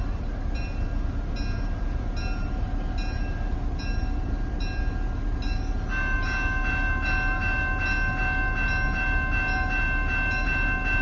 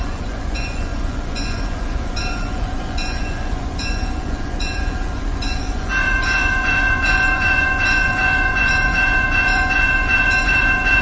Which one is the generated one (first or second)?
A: second